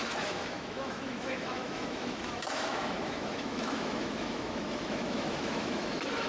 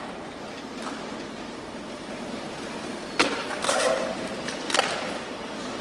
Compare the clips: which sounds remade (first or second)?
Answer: first